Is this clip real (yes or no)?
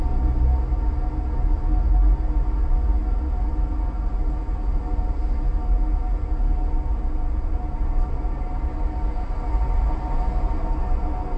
yes